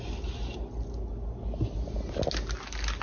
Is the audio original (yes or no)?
yes